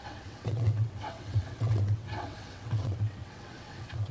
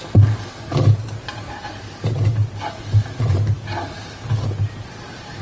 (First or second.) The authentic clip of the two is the second